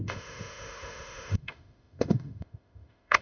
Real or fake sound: fake